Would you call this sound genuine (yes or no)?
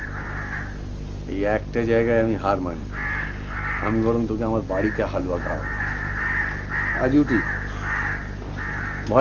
yes